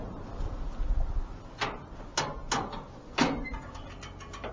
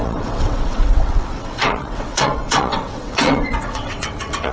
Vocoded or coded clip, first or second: second